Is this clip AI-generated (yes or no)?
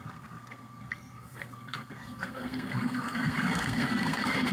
yes